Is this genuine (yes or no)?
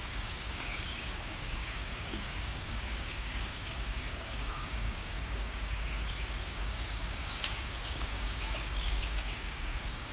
no